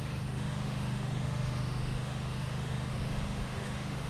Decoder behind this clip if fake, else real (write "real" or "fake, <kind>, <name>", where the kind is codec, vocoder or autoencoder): fake, autoencoder, DAC-VAE